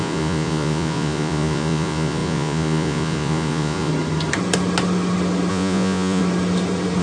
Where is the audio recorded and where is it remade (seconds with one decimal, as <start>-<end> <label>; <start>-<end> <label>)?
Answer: 0.0-3.9 remade; 3.9-5.5 recorded; 5.5-6.2 remade; 6.2-7.0 recorded